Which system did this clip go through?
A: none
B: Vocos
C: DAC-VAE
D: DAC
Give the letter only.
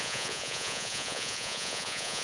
B